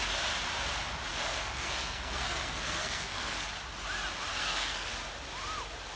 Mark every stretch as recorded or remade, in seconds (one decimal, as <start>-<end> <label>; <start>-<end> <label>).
0.0-1.1 recorded; 1.1-3.5 remade; 3.5-4.3 recorded; 4.3-4.9 remade; 4.9-6.0 recorded